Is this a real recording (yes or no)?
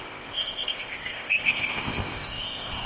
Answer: no